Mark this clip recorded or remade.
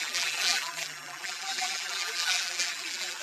remade